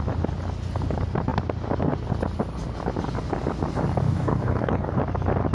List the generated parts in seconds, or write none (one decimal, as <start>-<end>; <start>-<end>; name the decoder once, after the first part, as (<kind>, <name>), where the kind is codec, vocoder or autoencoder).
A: 4.1-5.0 (codec, DAC)